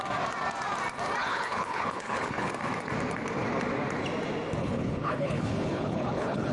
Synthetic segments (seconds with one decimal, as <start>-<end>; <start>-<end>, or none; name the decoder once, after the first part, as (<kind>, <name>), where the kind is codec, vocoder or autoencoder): 1.2-2.5 (codec, HILCodec); 4.6-6.5